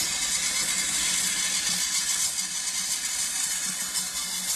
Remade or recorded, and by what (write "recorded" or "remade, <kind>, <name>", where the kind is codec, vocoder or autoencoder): recorded